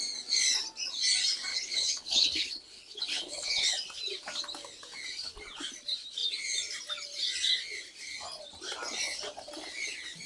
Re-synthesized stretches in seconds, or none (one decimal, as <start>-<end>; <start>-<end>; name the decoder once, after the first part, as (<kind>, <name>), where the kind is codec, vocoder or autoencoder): 1.5-3.7 (codec, HILCodec)